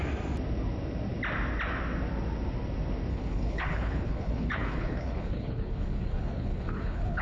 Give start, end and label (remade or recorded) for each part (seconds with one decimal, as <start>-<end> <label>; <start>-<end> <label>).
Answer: 0.0-3.1 recorded; 3.1-7.2 remade